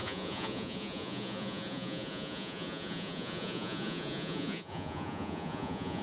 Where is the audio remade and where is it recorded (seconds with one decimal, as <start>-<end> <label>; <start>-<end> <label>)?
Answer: 0.0-6.0 remade